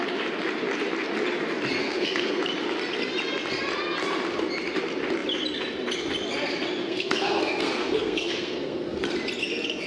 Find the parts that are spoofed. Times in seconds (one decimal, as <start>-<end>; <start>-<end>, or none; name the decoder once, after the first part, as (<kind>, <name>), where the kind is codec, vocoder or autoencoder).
1.8-2.4 (codec, SNAC); 6.8-9.0